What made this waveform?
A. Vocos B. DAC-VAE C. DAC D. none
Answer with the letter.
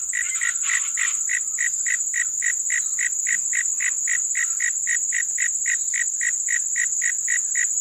D